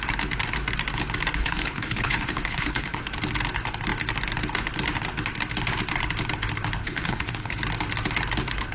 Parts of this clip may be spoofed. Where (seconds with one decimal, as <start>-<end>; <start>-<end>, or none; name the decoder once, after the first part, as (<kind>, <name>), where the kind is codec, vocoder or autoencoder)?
1.4-3.0 (codec, HILCodec); 6.8-7.6